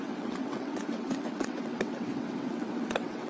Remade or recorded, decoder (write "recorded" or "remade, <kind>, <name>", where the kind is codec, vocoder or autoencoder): remade, vocoder, WaveNeXt